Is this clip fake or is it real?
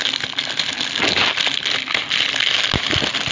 fake